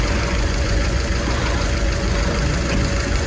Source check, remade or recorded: remade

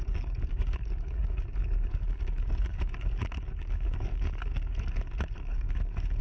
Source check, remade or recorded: remade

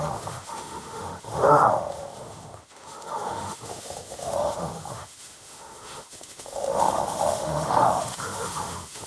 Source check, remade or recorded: remade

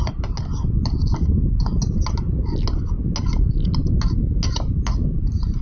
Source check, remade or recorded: recorded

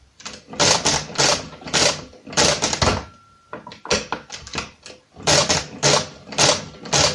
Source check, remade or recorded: recorded